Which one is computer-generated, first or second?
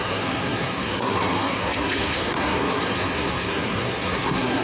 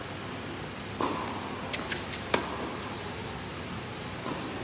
first